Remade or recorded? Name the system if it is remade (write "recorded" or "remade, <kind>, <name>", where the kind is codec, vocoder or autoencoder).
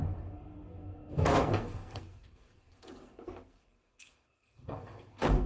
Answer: remade, codec, SNAC